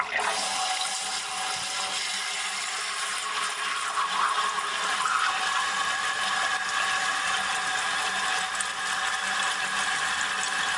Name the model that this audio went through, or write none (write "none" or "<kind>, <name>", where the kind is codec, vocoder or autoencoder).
none